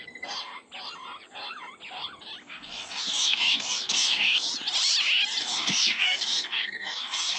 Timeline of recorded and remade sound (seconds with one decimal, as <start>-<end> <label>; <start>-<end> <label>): 0.0-2.4 recorded; 2.4-4.5 remade; 4.5-5.4 recorded; 5.4-7.4 remade

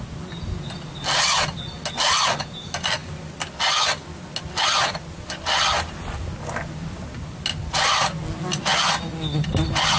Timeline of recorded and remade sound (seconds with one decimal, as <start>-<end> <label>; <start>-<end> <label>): 0.0-10.0 recorded